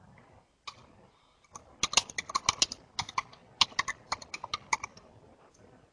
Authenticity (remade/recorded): recorded